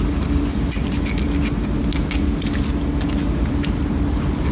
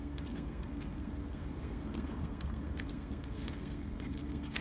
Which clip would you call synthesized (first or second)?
second